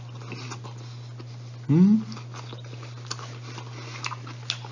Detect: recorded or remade recorded